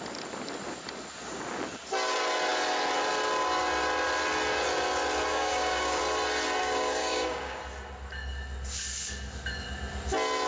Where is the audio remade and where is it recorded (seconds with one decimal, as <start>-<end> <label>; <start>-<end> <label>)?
0.0-5.3 recorded; 5.3-6.0 remade; 6.0-6.6 recorded; 6.6-7.6 remade; 7.6-10.5 recorded